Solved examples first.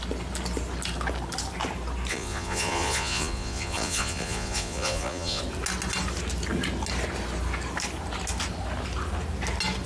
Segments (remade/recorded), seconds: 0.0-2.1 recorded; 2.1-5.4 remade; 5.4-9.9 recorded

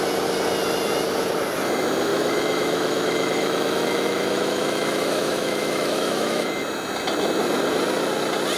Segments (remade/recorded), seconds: 0.0-2.1 recorded; 2.1-6.5 remade; 6.5-8.6 recorded